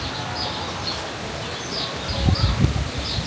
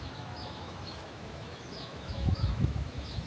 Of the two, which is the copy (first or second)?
second